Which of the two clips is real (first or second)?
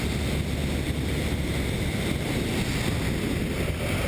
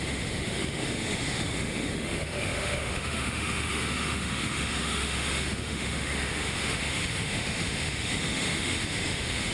first